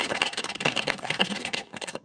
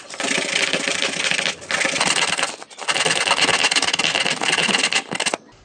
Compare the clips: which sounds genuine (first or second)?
second